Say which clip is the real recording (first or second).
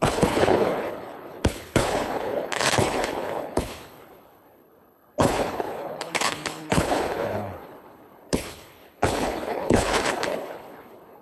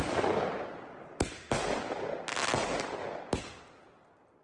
second